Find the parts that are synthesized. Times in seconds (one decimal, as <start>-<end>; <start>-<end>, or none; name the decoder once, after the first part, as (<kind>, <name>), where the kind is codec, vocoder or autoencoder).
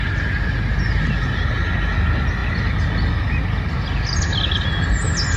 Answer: none